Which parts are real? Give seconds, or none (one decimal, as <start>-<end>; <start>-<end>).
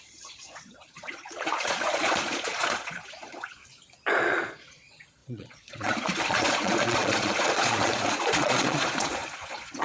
3.6-4.2